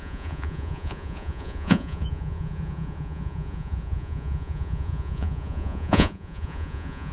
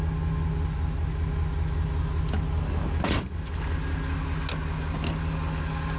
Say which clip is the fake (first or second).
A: first